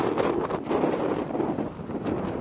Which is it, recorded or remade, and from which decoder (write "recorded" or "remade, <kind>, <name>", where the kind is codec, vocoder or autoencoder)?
recorded